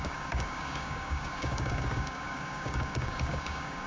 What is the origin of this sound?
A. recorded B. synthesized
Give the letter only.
B